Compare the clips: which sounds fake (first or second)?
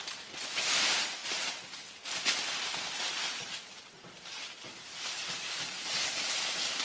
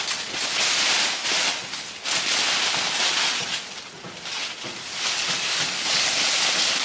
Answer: first